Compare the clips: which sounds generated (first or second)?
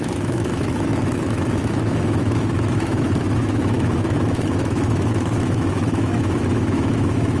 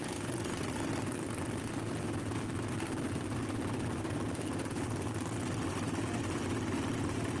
first